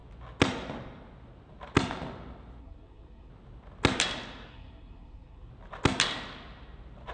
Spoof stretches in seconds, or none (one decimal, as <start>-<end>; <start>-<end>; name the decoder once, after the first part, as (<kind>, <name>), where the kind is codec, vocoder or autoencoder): 2.6-3.3 (codec, SNAC); 4.5-5.5